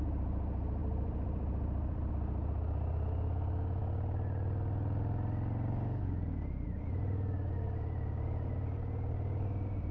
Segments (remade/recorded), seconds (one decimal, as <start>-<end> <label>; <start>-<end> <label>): 0.0-0.8 recorded; 0.8-2.1 remade; 2.1-9.9 recorded